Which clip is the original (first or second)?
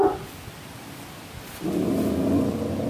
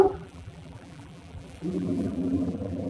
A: first